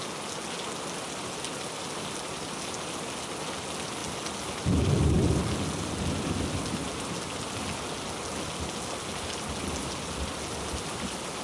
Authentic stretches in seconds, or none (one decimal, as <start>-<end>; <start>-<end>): 0.0-11.4